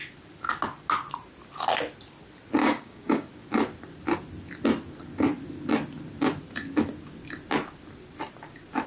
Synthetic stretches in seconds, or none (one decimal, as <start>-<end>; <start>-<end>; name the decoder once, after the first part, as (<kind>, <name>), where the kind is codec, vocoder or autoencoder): 2.6-3.3 (codec, DAC)